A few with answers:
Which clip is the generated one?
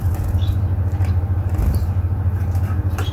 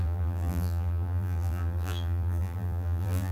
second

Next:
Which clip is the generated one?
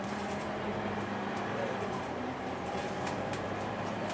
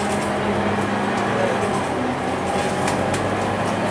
first